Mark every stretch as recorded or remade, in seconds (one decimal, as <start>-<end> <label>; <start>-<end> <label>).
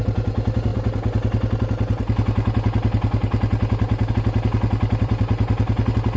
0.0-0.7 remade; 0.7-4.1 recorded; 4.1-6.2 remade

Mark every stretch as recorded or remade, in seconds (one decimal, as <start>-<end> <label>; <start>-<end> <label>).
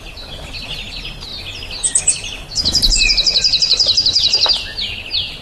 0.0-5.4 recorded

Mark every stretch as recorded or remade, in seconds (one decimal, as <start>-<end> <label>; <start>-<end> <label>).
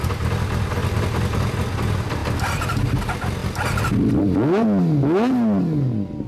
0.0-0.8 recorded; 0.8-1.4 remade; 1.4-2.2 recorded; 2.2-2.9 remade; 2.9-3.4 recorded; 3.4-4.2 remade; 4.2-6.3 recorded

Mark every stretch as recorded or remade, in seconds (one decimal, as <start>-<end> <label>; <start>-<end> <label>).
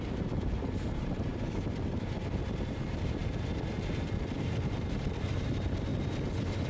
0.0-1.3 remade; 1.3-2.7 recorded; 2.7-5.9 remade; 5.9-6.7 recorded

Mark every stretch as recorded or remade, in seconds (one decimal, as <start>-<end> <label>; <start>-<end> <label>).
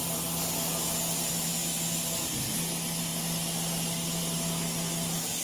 0.0-5.4 recorded